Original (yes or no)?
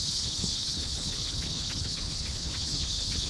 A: no